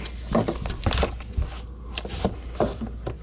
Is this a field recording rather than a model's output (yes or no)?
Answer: yes